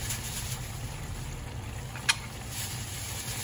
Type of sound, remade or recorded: recorded